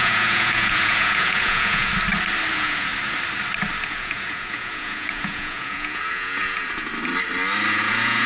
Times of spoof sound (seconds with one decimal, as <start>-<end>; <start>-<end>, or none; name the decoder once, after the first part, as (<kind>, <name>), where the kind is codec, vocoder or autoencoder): 0.0-1.9 (vocoder, Vocos); 2.5-2.9; 3.9-6.9; 7.7-8.3